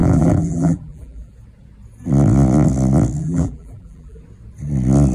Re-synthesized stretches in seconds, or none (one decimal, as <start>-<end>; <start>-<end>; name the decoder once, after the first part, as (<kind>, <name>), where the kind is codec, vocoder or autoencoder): 0.0-1.3 (vocoder, BigVGAN v2); 3.2-4.2

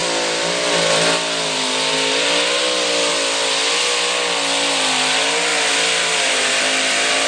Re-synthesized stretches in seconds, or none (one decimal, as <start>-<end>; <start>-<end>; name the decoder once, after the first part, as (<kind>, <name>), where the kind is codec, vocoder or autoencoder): 5.5-6.6 (vocoder, BigVGAN v2)

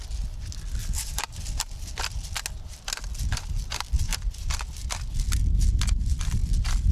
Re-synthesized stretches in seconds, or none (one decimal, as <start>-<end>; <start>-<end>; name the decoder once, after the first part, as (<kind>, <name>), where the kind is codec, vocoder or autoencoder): 0.8-1.4 (vocoder, BigVGAN v2); 4.1-4.8; 6.4-6.9

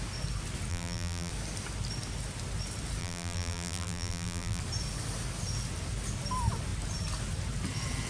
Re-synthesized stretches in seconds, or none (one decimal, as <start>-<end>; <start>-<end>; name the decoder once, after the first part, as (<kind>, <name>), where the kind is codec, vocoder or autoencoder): 0.7-1.3 (vocoder, BigVGAN v2); 3.0-4.6

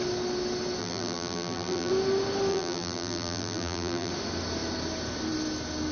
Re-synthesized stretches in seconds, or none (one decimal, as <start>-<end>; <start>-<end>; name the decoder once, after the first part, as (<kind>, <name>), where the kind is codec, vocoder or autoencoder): 0.8-1.9 (vocoder, BigVGAN v2); 2.5-4.1

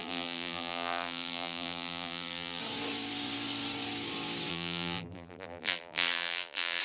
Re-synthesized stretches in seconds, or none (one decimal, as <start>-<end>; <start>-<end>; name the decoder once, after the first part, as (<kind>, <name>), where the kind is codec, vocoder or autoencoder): 0.0-2.6 (vocoder, BigVGAN v2); 4.5-6.8

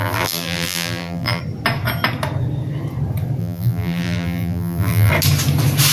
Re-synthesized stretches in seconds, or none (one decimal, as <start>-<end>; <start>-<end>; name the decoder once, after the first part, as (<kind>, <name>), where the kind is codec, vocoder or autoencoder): 0.0-1.4 (vocoder, BigVGAN v2); 3.4-5.1

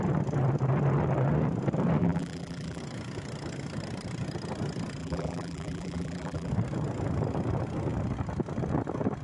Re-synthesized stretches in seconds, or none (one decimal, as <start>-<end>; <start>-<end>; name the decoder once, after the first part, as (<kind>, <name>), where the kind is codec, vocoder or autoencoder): 2.0-2.8 (vocoder, BigVGAN v2); 5.0-6.5